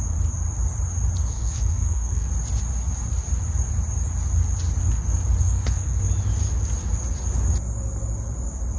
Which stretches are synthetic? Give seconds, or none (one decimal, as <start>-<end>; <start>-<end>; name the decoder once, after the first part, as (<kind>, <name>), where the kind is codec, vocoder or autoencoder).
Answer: 1.2-2.3 (codec, SNAC); 5.4-6.0